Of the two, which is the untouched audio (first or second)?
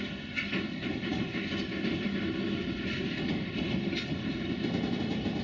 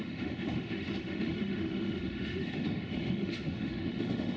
first